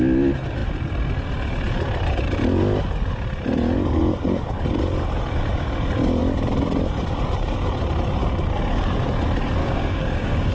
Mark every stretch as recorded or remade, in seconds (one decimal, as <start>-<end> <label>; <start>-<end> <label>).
0.0-9.6 recorded; 9.6-10.5 remade

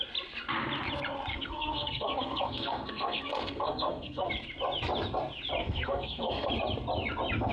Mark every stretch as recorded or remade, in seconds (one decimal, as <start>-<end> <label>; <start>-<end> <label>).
0.0-1.3 recorded; 1.3-4.3 remade; 4.3-5.6 recorded; 5.6-6.5 remade; 6.5-7.5 recorded

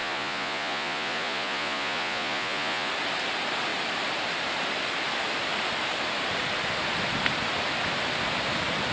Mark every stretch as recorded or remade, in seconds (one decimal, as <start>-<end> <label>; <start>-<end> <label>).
0.0-2.9 remade; 2.9-8.9 recorded

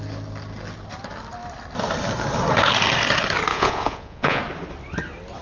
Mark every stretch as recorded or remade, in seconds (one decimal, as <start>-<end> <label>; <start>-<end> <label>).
0.0-3.5 recorded; 3.5-4.4 remade; 4.4-5.4 recorded

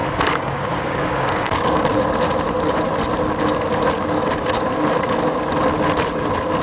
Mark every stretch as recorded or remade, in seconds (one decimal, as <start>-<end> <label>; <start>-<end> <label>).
0.0-2.0 remade; 2.0-6.6 recorded